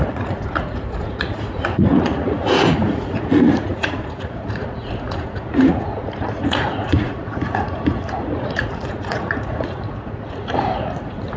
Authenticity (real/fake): fake